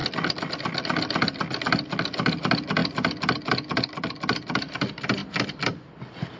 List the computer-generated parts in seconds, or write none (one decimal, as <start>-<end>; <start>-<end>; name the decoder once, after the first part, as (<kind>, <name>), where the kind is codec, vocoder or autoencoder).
none